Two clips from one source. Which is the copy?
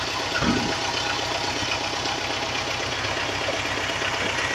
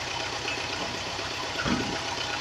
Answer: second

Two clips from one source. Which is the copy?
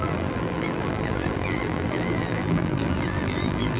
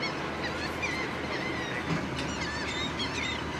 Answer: first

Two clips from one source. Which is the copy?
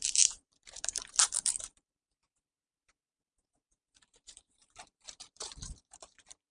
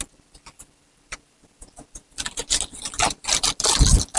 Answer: first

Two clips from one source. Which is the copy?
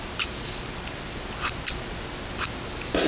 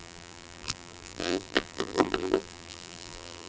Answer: second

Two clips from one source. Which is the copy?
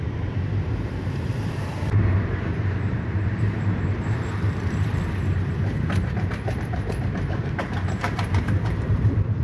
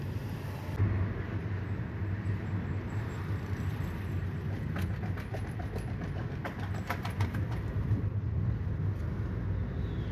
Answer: first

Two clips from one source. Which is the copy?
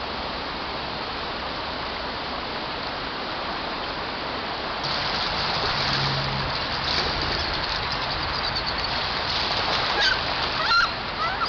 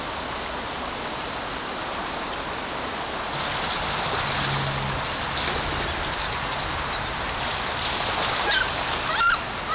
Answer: first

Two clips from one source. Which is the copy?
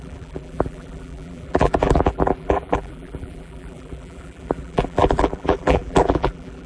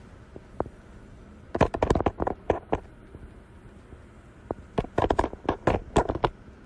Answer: first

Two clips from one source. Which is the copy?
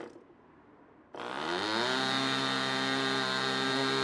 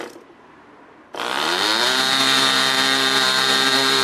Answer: second